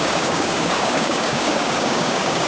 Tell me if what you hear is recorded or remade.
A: remade